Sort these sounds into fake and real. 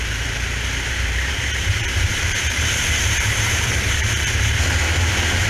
fake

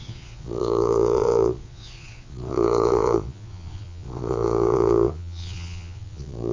fake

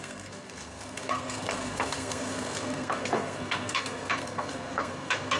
fake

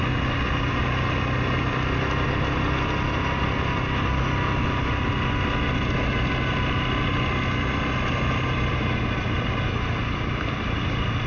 real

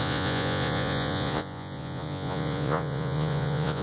fake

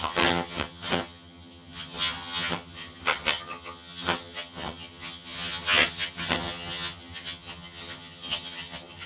fake